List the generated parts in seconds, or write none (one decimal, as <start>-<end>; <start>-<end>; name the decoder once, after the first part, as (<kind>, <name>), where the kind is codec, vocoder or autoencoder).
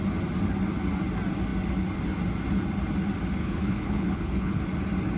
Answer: 3.4-4.6 (codec, HILCodec)